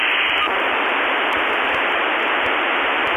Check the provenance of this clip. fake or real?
fake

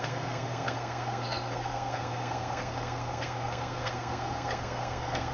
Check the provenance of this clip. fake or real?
fake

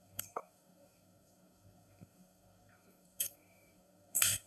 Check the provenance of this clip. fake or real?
fake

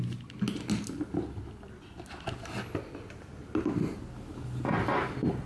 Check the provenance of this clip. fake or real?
real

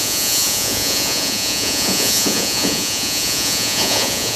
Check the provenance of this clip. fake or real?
fake